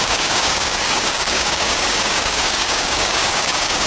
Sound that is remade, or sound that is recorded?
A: remade